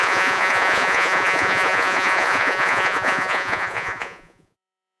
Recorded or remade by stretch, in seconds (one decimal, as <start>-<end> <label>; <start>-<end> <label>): 0.0-5.0 remade